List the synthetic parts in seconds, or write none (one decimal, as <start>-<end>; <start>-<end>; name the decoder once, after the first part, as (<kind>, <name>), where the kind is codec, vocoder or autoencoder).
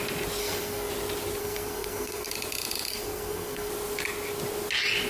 0.4-0.9 (codec, SNAC); 1.4-2.3; 2.9-3.7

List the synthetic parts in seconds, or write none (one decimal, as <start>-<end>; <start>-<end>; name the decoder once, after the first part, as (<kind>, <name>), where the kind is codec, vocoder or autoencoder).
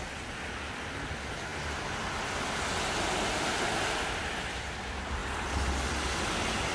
none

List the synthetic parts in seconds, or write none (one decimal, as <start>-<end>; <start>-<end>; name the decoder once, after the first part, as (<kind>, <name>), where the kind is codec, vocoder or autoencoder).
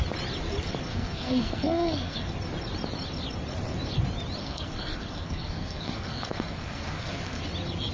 0.9-2.3 (codec, SNAC); 4.4-7.4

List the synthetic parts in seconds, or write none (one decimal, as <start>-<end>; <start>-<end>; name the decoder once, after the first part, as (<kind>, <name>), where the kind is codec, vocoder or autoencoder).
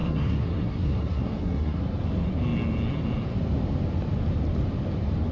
0.0-1.8 (codec, SNAC)